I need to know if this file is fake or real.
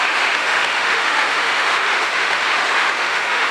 fake